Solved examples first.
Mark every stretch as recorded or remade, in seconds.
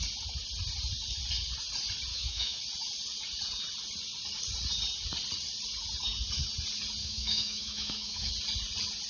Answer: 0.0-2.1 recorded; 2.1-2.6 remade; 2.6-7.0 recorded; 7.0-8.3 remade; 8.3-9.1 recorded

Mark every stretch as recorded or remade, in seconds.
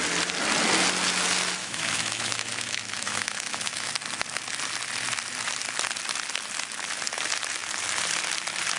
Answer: 0.0-1.6 recorded; 1.6-3.9 remade; 3.9-8.8 recorded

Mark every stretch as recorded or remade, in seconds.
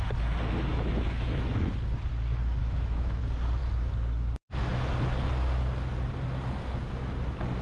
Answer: 0.0-0.7 recorded; 0.7-1.7 remade; 1.7-2.6 recorded; 2.6-3.2 remade; 3.2-7.6 recorded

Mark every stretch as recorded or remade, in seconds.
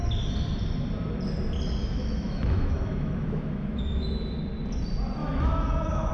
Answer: 0.0-1.8 recorded; 1.8-4.3 remade; 4.3-5.2 recorded; 5.2-6.1 remade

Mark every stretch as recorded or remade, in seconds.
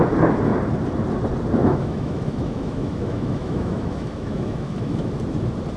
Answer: 0.0-1.6 recorded; 1.6-5.1 remade; 5.1-5.8 recorded